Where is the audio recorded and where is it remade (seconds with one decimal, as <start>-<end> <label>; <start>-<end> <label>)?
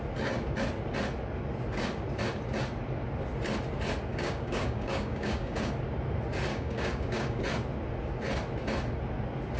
0.0-4.1 recorded; 4.1-5.7 remade; 5.7-6.5 recorded; 6.5-7.4 remade; 7.4-9.6 recorded